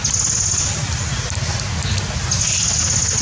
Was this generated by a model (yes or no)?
no